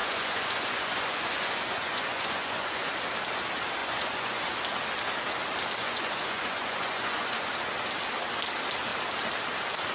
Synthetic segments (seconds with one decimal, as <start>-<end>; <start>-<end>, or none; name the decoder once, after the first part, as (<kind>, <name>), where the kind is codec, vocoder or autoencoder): 0.0-2.9 (vocoder, Vocos); 3.8-4.4; 5.8-7.5